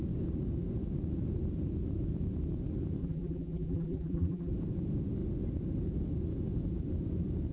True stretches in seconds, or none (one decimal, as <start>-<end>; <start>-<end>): 0.0-3.0; 4.5-7.5